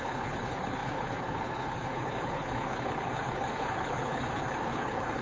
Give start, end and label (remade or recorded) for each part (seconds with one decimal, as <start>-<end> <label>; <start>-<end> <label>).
0.0-5.2 remade